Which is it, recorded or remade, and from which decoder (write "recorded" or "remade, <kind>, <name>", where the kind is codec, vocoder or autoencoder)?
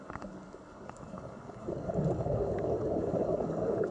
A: remade, codec, DAC